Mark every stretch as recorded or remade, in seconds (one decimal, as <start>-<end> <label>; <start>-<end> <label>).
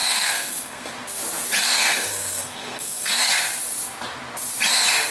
0.0-0.9 remade; 0.9-1.6 recorded; 1.6-3.3 remade; 3.3-5.1 recorded